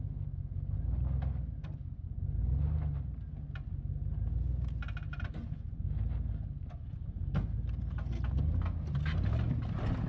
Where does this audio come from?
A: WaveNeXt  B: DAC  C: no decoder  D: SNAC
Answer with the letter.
C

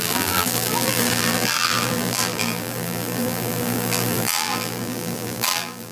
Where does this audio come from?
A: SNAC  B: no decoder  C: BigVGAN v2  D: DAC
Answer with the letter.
C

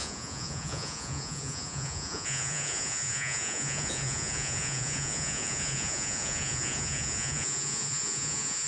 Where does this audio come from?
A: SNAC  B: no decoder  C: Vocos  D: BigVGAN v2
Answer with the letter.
C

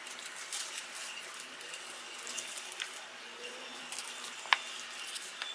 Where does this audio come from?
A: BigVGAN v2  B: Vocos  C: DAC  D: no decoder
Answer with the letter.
D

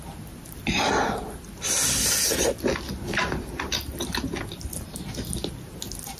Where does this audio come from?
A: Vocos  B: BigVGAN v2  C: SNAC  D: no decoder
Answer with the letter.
D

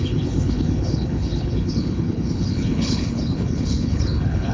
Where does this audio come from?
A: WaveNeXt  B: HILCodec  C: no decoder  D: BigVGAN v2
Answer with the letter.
B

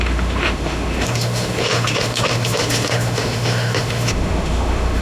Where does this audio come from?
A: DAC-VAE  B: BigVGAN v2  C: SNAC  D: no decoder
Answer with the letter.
A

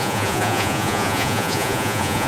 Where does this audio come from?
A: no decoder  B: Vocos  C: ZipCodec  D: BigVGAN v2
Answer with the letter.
B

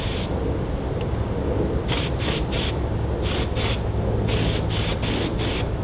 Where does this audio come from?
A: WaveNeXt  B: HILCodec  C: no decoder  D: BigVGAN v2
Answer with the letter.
C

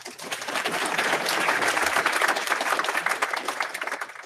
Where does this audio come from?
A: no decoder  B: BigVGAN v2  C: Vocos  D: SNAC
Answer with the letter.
B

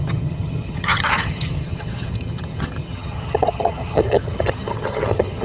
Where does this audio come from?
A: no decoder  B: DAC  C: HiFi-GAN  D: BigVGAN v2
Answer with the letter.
C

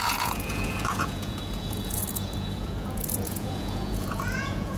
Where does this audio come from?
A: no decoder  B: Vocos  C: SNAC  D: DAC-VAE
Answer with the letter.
B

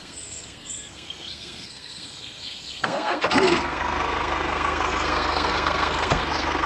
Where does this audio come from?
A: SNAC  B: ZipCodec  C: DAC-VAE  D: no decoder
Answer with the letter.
A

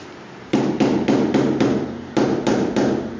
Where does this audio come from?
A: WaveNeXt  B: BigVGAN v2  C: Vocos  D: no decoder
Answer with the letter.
D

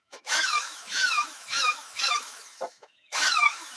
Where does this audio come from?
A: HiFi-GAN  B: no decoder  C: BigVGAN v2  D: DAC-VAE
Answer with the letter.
D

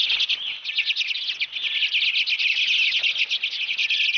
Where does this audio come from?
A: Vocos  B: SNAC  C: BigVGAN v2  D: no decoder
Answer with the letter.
D